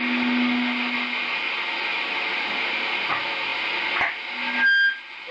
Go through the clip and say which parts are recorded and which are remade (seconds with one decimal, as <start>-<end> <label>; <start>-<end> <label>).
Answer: 0.0-5.3 recorded

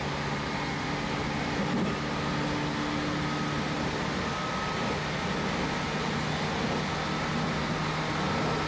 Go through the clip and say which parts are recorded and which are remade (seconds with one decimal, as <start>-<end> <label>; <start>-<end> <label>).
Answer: 0.0-8.7 recorded

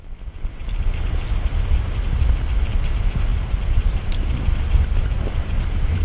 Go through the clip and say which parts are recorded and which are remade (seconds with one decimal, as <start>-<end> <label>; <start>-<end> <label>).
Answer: 0.0-3.3 recorded; 3.3-4.4 remade; 4.4-6.0 recorded

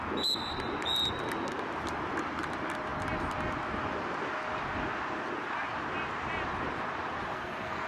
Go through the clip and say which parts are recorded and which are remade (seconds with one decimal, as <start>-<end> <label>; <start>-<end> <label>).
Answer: 0.0-7.3 recorded; 7.3-7.9 remade